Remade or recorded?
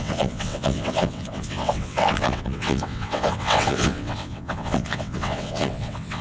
remade